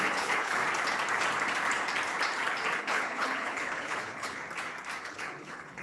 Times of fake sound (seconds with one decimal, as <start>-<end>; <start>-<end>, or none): 0.0-0.6; 2.8-4.4; 5.0-5.8